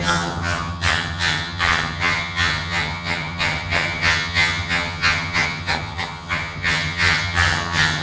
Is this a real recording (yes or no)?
no